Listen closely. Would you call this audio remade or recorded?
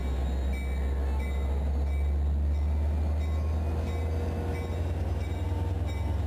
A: recorded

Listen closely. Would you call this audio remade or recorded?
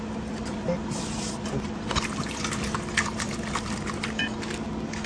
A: recorded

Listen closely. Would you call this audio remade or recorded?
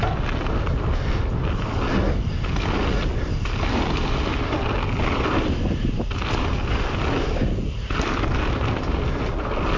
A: recorded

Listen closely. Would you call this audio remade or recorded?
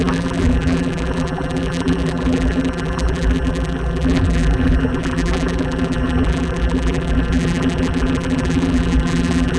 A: remade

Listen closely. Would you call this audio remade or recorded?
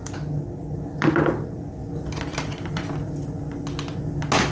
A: recorded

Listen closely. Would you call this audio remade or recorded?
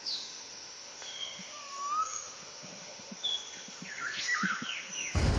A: remade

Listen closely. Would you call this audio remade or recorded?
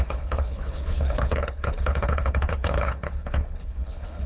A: remade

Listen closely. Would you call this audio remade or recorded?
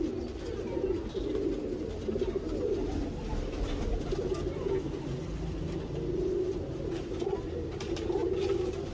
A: recorded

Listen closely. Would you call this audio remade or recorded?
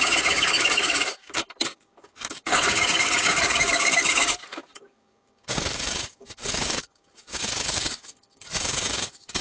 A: remade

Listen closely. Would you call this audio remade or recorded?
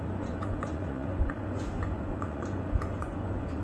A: remade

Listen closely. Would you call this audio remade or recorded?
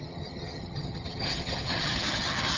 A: remade